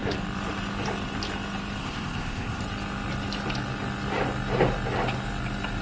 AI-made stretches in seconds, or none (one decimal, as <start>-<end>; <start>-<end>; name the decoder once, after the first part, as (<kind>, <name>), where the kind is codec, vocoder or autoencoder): 1.8-2.6 (codec, ZipCodec)